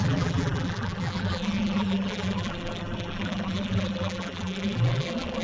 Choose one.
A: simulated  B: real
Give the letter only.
A